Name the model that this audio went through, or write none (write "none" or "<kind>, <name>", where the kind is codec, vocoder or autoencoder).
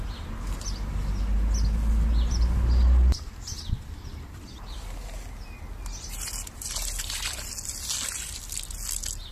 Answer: none